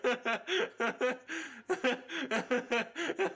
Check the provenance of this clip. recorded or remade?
recorded